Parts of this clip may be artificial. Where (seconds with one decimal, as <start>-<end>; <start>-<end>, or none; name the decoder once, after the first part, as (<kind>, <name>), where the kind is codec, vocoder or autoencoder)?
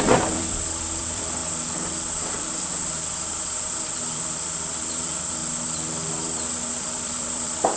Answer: 0.0-1.4 (vocoder, BigVGAN v2); 3.9-5.4; 6.1-7.8